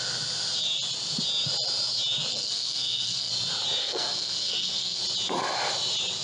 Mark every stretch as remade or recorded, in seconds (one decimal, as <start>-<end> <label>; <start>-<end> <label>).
0.0-2.3 recorded; 2.3-3.3 remade; 3.3-3.8 recorded; 3.8-5.0 remade; 5.0-6.2 recorded